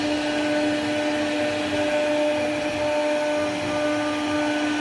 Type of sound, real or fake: real